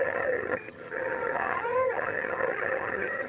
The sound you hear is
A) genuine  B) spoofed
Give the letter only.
B